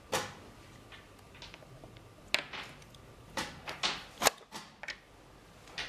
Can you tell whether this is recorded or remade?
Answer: recorded